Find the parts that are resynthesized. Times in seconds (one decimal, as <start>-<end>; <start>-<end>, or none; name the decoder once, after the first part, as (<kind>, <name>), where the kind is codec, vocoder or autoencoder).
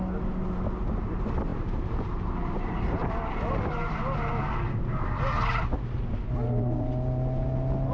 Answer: 1.5-3.1 (vocoder, BigVGAN v2); 6.4-6.9